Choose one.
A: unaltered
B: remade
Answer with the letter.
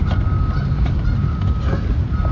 A